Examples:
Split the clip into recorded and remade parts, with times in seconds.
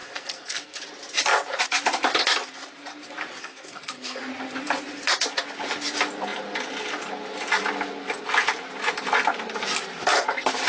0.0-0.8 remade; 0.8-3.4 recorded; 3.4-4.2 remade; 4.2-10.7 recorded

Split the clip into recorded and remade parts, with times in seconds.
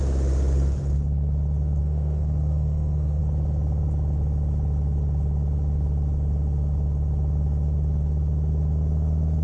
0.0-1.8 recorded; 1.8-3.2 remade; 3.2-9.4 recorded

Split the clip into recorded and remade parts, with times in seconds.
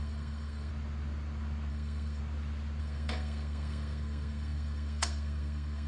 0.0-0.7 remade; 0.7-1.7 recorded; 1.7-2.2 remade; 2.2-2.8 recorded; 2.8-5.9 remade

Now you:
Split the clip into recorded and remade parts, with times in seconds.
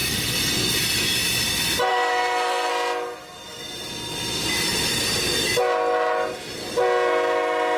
0.0-1.9 recorded; 1.9-2.7 remade; 2.7-7.8 recorded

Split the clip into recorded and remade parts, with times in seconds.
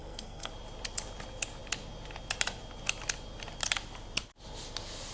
0.0-0.5 remade; 0.5-5.1 recorded